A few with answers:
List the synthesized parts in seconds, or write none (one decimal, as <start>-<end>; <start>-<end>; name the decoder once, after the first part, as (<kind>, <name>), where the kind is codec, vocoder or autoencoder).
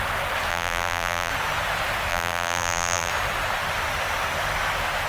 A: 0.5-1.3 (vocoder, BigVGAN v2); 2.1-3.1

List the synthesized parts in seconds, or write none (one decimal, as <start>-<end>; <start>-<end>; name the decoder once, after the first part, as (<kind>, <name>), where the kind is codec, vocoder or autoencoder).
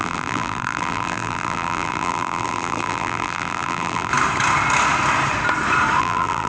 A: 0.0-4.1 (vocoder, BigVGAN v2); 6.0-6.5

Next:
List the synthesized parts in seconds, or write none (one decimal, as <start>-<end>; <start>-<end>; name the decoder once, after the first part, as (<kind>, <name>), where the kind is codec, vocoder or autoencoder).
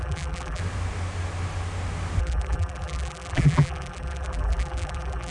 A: 0.0-0.6 (vocoder, BigVGAN v2); 2.2-5.3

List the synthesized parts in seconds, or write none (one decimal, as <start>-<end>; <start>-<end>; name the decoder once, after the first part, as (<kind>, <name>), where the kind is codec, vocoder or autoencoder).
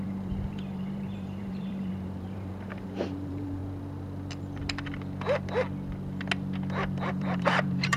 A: 0.0-3.6 (vocoder, BigVGAN v2); 7.1-8.0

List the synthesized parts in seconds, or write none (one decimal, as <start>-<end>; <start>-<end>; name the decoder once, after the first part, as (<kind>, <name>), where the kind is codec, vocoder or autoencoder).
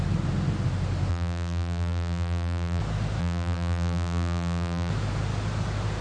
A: 1.1-2.8 (vocoder, BigVGAN v2); 3.2-4.9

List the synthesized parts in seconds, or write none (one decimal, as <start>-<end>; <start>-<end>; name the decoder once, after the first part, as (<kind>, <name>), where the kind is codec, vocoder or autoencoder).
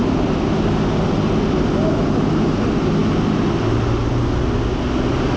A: none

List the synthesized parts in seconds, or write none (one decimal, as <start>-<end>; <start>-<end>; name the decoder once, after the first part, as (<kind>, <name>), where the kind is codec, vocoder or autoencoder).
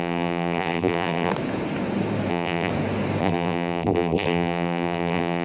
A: 0.0-1.3 (vocoder, BigVGAN v2); 2.3-2.7; 3.2-5.4